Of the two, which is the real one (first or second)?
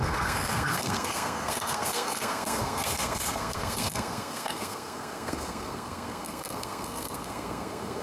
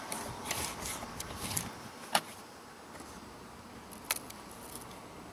second